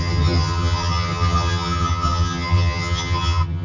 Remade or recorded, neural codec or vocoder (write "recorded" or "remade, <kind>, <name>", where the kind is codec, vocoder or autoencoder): remade, vocoder, HiFi-GAN